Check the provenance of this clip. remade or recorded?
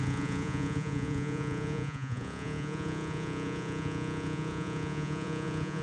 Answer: remade